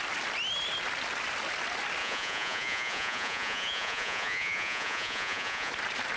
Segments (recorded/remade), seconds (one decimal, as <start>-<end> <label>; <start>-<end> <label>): 0.0-2.0 recorded; 2.0-5.7 remade; 5.7-6.2 recorded